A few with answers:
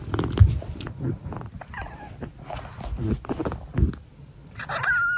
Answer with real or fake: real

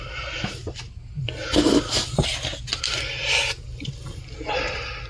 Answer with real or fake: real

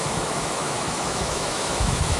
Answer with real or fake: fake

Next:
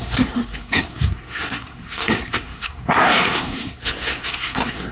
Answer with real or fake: fake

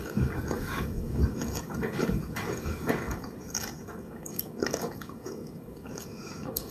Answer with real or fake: fake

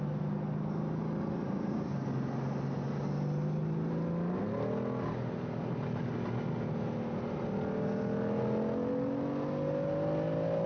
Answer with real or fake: real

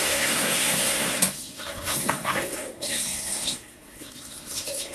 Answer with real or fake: fake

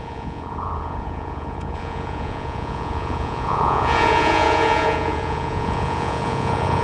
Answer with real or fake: fake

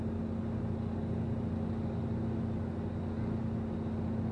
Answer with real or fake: real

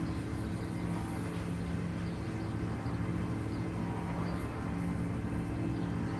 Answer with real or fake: real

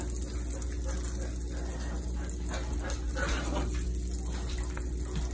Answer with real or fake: real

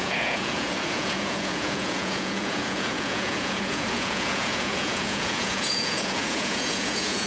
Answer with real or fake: fake